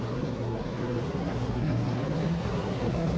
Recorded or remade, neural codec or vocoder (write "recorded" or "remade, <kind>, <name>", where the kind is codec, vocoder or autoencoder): remade, codec, SNAC